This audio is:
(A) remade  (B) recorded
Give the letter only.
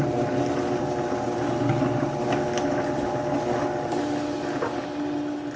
B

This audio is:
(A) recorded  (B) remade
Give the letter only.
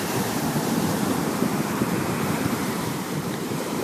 B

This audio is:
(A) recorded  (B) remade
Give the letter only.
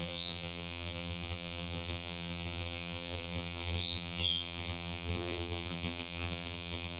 B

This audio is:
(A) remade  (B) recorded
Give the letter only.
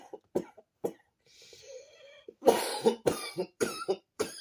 A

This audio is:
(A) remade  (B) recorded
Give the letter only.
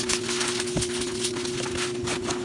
B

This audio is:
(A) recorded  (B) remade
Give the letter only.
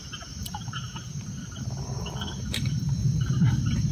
B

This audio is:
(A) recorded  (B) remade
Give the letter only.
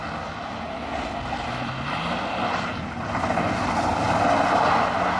A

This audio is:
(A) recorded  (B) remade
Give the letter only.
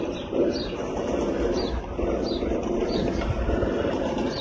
B